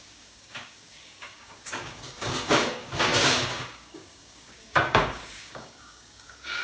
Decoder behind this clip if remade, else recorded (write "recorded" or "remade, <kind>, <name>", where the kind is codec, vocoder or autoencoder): remade, codec, DAC